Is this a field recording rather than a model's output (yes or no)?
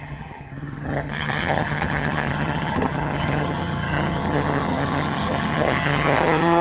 no